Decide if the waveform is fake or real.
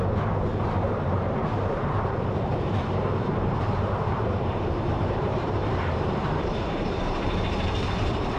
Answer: fake